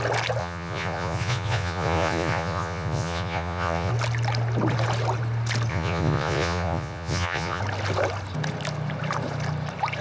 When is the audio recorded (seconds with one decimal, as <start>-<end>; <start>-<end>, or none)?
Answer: 0.0-0.4; 3.9-5.7; 7.6-10.0